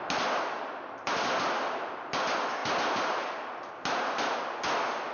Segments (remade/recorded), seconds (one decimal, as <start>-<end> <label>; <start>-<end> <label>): 0.0-5.1 recorded